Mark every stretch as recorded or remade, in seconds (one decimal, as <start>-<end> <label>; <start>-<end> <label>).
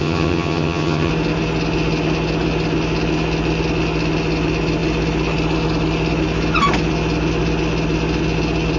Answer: 0.0-1.1 remade; 1.1-8.8 recorded